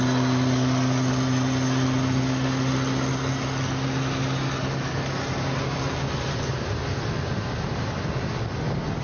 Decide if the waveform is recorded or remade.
recorded